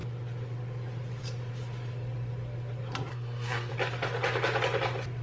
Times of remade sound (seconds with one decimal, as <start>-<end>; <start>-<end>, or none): 3.1-3.7